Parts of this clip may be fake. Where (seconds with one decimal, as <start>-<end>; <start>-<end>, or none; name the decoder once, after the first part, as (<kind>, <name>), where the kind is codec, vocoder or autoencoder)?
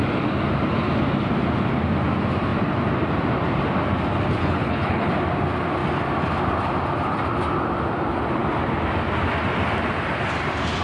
4.4-5.1 (codec, HILCodec)